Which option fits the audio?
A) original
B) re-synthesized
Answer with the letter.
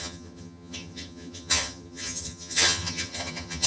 B